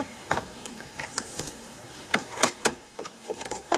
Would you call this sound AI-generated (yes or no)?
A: yes